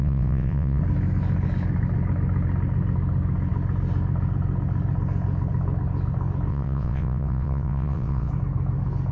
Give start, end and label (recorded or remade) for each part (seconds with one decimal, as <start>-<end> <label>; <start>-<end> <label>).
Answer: 0.0-0.8 remade; 0.8-6.5 recorded; 6.5-8.3 remade; 8.3-9.1 recorded